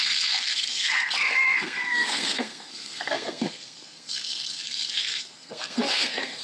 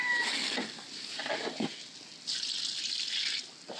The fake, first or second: first